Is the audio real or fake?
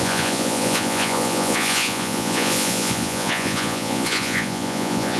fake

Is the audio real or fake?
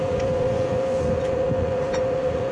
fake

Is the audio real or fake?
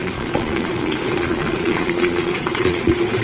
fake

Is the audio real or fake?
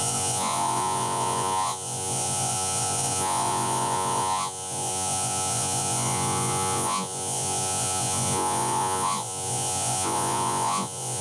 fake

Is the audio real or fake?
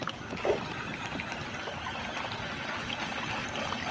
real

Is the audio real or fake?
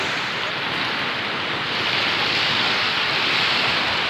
real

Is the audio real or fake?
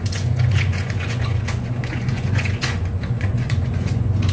fake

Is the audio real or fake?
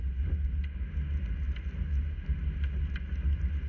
real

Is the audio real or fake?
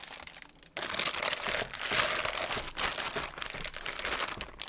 real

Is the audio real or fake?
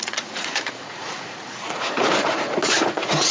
fake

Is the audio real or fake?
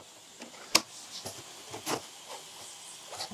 real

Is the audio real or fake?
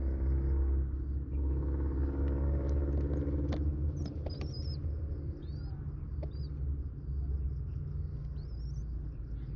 real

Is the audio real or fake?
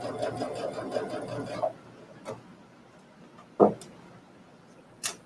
real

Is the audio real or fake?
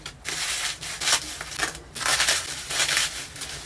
real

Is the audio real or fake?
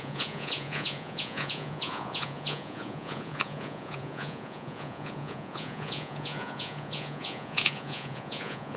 fake